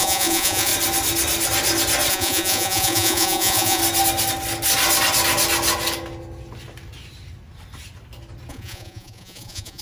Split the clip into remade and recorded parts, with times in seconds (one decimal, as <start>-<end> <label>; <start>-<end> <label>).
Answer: 0.0-0.7 remade; 0.7-2.1 recorded; 2.1-3.8 remade; 3.8-8.5 recorded; 8.5-9.8 remade